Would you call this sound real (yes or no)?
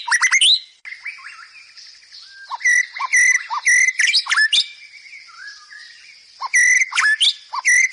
yes